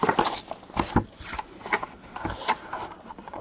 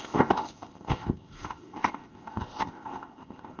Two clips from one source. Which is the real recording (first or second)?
first